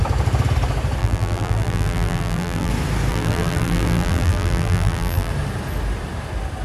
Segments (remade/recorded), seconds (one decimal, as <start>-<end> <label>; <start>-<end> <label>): 0.0-1.0 recorded; 1.0-2.7 remade; 2.7-3.1 recorded; 3.1-5.3 remade; 5.3-6.6 recorded